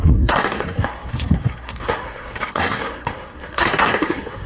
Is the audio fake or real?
fake